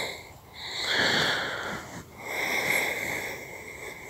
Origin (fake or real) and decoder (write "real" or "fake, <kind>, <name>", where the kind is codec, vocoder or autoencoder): real